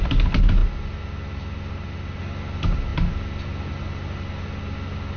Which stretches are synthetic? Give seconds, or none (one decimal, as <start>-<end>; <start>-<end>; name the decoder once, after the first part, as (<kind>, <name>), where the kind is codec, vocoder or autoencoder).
none